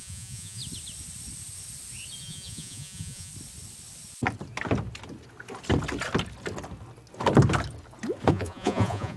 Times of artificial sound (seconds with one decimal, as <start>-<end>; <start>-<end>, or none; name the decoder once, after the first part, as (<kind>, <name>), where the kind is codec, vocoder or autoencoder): 0.0-0.6 (vocoder, Vocos); 2.2-3.3; 8.3-9.2